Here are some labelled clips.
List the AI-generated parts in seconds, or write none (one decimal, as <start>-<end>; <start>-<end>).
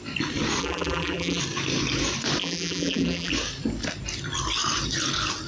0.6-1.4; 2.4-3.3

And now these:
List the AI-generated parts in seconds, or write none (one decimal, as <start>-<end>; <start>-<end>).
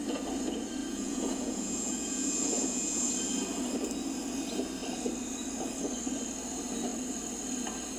0.8-3.1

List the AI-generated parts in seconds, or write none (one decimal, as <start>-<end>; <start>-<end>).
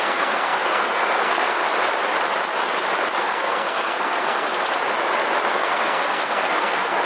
0.0-1.6; 3.2-4.5; 5.5-7.1